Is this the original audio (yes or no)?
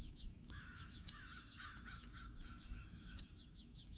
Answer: no